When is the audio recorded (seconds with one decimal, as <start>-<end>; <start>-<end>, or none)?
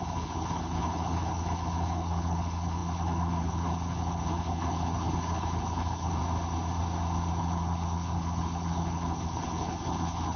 6.2-7.4